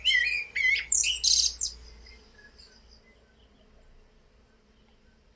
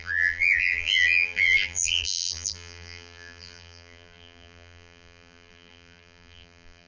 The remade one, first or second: second